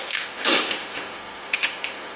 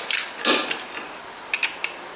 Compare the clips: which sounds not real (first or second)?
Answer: first